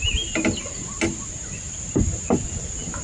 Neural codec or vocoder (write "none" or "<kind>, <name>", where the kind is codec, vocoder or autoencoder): none